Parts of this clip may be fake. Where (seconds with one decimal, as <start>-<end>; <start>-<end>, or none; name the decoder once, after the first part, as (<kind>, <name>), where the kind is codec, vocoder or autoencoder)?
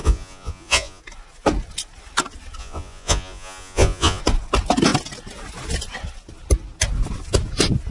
0.0-1.0 (vocoder, Vocos); 2.6-4.2